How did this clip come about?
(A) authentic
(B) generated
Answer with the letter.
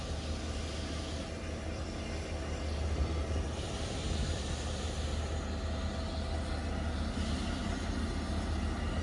A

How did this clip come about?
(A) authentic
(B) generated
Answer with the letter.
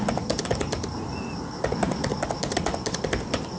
A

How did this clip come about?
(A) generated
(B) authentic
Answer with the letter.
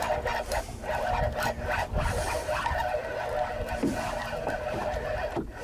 B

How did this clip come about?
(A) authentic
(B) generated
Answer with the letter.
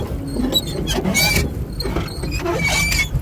A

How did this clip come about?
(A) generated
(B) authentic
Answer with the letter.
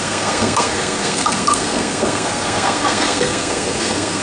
A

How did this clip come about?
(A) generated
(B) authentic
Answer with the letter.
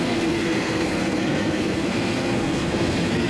A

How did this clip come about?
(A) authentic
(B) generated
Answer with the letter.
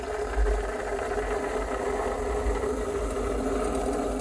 A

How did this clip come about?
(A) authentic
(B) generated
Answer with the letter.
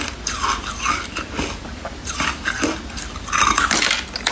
A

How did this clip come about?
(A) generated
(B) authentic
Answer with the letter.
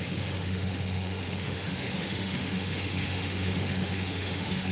A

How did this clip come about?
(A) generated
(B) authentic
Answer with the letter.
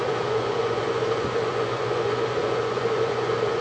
A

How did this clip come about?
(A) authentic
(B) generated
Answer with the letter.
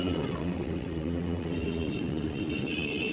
B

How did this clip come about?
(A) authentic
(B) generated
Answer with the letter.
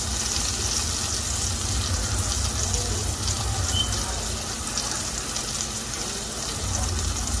A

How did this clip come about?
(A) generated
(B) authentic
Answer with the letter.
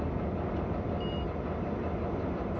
B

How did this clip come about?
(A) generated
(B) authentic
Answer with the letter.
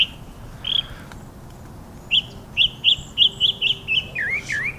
B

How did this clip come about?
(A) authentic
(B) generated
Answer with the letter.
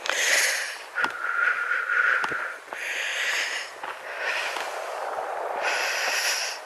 A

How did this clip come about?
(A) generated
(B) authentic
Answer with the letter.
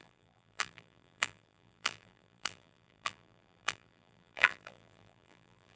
A